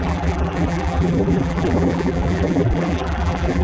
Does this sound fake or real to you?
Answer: fake